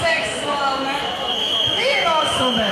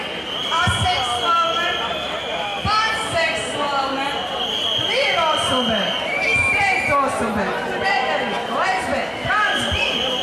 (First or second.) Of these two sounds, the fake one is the first